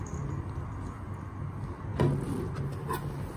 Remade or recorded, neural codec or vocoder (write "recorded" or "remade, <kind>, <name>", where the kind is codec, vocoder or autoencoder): recorded